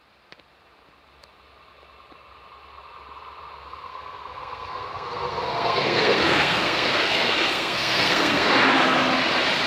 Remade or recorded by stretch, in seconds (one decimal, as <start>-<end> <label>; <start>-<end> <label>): 0.0-3.6 recorded; 3.6-8.5 remade; 8.5-9.7 recorded